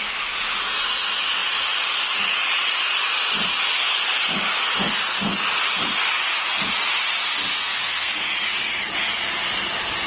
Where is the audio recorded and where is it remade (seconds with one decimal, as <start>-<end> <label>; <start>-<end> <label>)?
0.0-7.6 recorded; 7.6-8.1 remade; 8.1-10.1 recorded

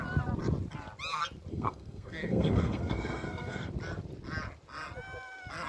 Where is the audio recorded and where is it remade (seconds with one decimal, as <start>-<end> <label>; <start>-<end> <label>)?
0.0-1.5 recorded; 1.5-3.7 remade; 3.7-5.7 recorded